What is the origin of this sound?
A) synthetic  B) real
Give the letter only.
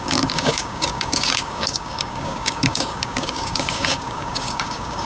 A